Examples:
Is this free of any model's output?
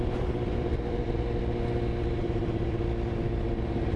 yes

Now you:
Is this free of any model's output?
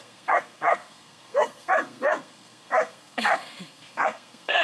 no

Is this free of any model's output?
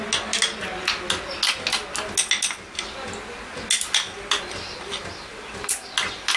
yes